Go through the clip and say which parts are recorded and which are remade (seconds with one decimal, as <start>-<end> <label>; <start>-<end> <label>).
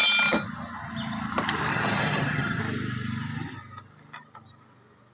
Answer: 0.0-1.7 recorded; 1.7-2.6 remade; 2.6-5.1 recorded